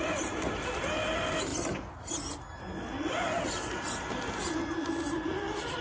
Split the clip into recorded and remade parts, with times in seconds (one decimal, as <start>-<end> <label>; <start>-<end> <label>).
0.0-5.8 recorded